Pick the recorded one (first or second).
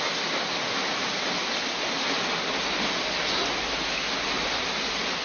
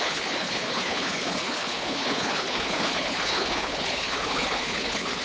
first